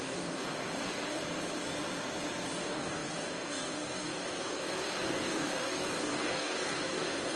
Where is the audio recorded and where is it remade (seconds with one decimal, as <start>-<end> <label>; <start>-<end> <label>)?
0.0-1.2 remade; 1.2-2.6 recorded; 2.6-7.4 remade